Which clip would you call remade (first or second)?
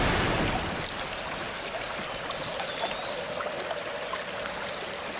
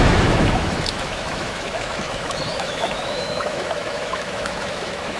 second